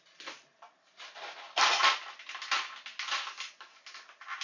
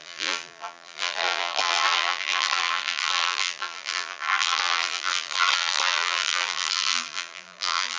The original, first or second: first